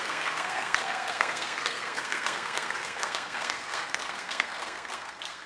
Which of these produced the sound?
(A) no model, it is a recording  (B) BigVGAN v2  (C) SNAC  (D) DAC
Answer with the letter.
C